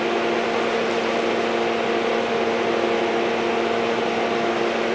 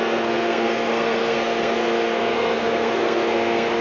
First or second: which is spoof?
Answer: second